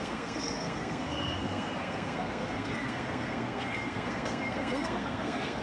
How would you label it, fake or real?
fake